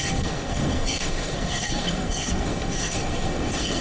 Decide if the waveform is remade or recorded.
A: remade